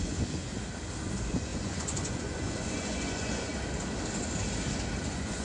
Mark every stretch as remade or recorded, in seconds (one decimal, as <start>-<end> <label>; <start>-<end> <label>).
0.0-0.5 remade; 0.5-1.1 recorded; 1.1-3.5 remade; 3.5-5.0 recorded; 5.0-5.4 remade